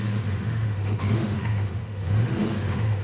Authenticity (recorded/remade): remade